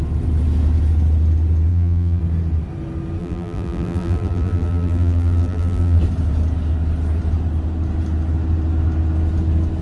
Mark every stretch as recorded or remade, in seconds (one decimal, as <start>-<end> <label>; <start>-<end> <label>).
0.0-1.7 recorded; 1.7-2.2 remade; 2.2-3.2 recorded; 3.2-6.0 remade; 6.0-9.8 recorded